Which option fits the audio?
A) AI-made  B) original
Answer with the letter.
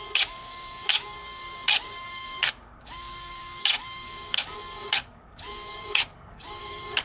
A